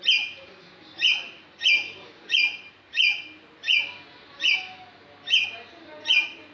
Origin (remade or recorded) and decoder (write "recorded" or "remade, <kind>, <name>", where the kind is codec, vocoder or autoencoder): recorded